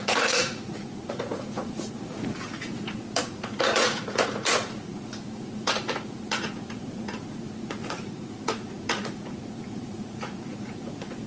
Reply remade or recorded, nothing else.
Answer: remade